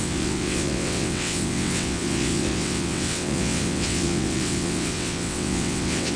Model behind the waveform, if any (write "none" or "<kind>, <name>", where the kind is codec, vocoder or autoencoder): vocoder, WaveNeXt